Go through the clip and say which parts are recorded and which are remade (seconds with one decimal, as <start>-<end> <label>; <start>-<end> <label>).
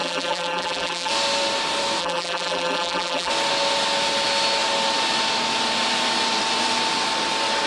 0.0-1.1 remade; 1.1-2.0 recorded; 2.0-3.3 remade; 3.3-7.7 recorded